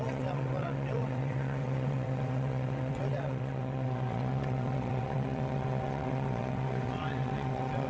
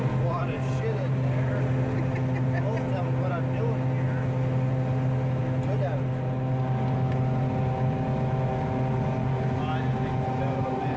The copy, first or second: first